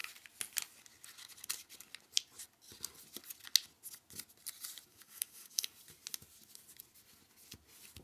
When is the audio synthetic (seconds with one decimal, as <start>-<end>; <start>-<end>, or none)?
4.9-5.7